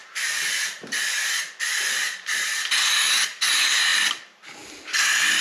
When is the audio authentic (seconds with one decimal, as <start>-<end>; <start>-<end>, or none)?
0.0-3.2